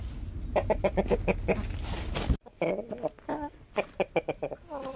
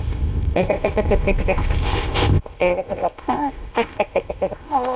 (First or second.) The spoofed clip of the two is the second